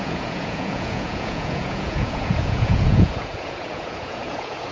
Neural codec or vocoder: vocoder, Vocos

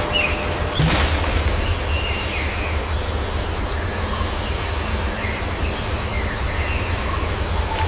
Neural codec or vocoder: none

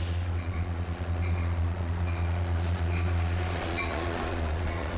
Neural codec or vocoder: vocoder, Vocos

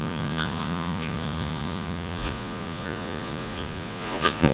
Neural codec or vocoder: vocoder, Vocos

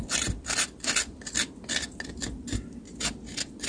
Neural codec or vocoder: none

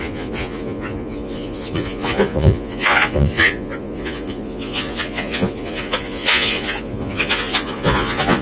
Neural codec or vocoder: vocoder, Vocos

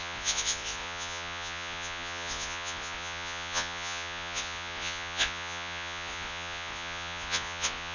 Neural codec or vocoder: vocoder, Vocos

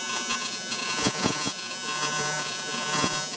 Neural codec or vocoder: vocoder, Vocos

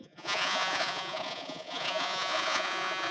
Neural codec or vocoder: vocoder, Vocos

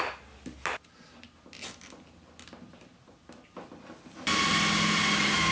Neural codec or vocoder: none